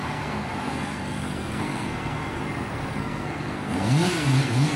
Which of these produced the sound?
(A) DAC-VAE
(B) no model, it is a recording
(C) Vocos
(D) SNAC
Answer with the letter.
D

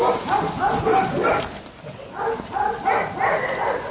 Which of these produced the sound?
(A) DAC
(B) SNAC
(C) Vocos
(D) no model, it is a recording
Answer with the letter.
D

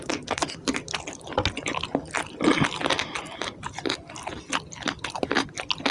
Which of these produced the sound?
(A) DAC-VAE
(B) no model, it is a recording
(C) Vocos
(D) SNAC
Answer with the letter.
B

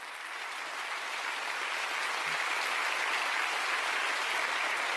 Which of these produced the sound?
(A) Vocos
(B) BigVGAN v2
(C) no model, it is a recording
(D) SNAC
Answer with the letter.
C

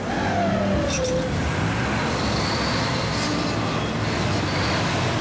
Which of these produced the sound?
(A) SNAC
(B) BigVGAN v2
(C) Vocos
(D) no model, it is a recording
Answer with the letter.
D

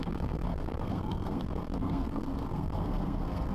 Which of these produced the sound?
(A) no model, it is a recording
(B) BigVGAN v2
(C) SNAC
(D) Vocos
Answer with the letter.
C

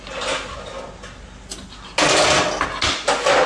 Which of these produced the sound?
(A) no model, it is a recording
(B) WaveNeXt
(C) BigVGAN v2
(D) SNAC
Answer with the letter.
A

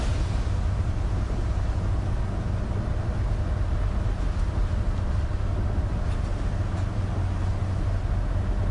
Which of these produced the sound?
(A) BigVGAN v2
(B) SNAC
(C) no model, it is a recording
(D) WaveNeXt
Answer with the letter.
C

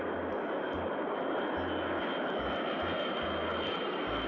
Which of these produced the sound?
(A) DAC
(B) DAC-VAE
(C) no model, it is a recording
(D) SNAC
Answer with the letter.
C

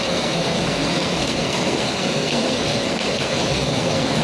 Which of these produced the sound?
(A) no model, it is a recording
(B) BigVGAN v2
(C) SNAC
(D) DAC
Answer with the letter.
C